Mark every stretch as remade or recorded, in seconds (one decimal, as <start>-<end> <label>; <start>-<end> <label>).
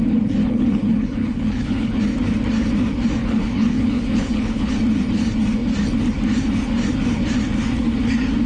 0.0-0.4 recorded; 0.4-2.0 remade; 2.0-3.2 recorded; 3.2-4.7 remade; 4.7-8.5 recorded